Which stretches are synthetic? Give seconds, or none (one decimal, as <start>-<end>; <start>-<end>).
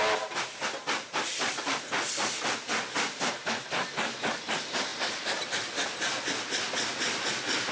none